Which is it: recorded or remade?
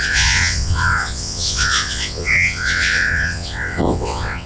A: remade